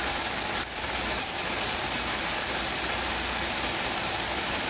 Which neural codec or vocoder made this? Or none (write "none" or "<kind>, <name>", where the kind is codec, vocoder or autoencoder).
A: vocoder, BigVGAN v2